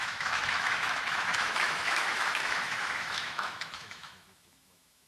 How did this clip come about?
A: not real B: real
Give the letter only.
A